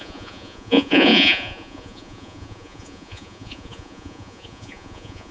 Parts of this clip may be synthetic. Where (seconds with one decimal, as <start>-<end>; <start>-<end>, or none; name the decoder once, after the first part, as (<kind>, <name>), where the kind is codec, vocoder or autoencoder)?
0.0-5.3 (vocoder, Vocos)